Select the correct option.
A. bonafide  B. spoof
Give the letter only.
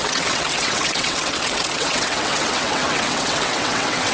B